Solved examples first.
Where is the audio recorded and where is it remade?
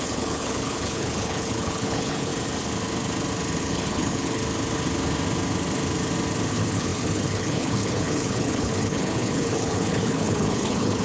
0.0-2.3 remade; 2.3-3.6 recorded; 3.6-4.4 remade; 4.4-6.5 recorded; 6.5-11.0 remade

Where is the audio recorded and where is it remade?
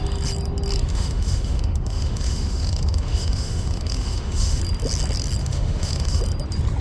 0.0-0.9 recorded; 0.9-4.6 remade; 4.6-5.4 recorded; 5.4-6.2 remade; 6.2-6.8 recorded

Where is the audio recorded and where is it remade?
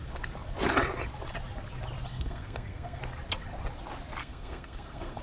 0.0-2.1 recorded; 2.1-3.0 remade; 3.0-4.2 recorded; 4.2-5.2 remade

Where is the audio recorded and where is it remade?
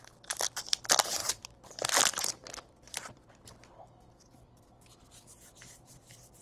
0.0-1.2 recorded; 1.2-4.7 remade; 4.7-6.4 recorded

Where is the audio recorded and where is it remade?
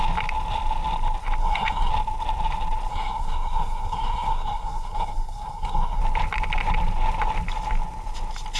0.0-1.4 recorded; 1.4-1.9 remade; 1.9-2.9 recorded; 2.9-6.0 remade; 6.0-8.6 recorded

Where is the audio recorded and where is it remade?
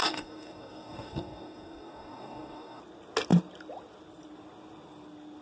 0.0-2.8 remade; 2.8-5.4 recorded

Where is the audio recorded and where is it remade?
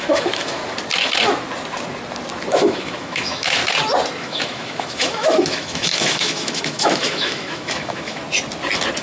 0.0-0.6 remade; 0.6-2.5 recorded; 2.5-3.6 remade; 3.6-4.2 recorded; 4.2-8.2 remade; 8.2-9.0 recorded